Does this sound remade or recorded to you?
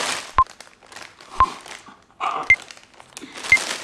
recorded